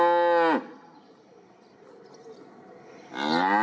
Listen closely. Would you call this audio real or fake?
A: real